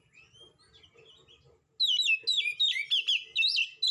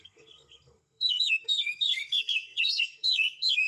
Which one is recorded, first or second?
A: first